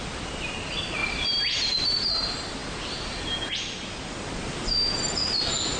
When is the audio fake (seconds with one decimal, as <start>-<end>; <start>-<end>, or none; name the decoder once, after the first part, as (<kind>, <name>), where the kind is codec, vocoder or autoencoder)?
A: 1.0-2.1 (vocoder, BigVGAN v2)